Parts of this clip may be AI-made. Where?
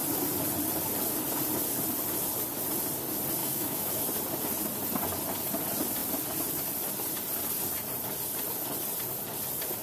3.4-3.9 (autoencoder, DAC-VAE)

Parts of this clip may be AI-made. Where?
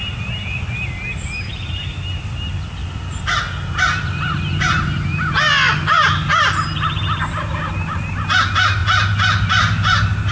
none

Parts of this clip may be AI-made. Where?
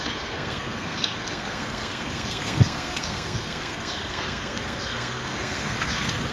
0.0-6.3 (codec, SNAC)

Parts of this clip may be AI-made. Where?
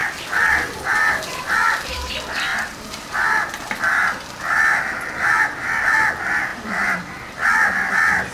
0.9-2.1 (vocoder, BigVGAN v2); 2.5-3.2; 6.5-7.9